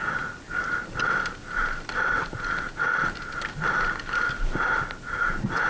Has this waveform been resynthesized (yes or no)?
no